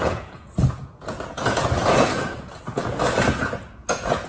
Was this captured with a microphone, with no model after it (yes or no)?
no